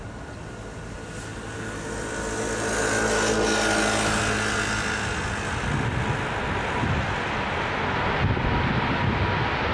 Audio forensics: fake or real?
real